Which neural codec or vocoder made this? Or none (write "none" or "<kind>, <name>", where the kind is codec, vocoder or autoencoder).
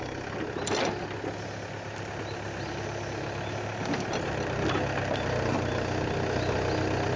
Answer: none